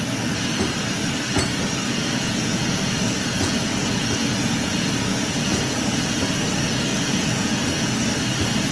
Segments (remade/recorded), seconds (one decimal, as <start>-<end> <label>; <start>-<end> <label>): 0.0-1.8 recorded; 1.8-6.3 remade; 6.3-6.9 recorded; 6.9-7.5 remade; 7.5-8.7 recorded